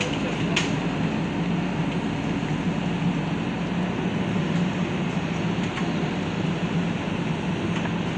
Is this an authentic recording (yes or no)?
yes